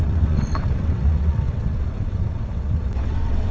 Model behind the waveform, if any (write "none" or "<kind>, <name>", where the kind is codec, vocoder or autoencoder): vocoder, WaveNeXt